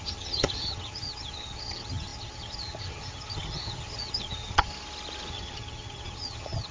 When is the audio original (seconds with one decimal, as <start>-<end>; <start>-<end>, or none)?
4.7-5.3